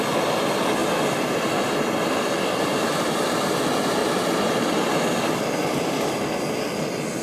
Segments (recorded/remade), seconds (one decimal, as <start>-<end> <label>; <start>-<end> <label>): 0.0-0.8 recorded; 0.8-3.6 remade; 3.6-4.0 recorded; 4.0-6.3 remade; 6.3-7.2 recorded